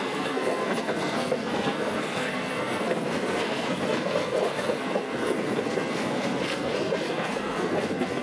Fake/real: fake